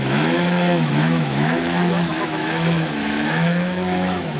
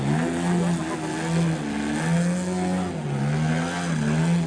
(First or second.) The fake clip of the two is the first